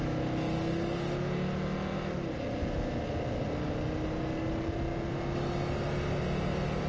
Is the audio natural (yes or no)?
yes